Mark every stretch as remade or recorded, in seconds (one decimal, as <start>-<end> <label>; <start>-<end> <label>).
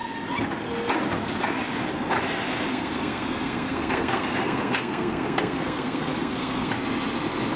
0.0-2.7 recorded; 2.7-6.7 remade; 6.7-7.6 recorded